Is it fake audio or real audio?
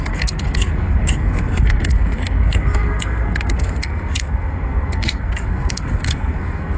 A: fake